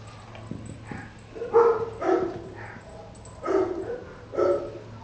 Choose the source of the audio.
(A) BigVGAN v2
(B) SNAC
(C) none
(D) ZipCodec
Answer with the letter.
C